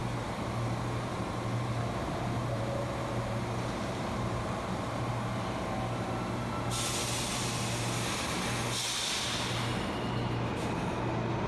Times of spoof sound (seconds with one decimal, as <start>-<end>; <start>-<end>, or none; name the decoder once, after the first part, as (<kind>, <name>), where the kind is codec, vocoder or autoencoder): 0.0-5.1 (vocoder, BigVGAN v2)